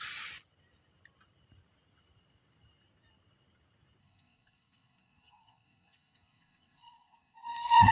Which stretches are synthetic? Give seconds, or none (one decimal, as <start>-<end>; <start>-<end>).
4.0-7.9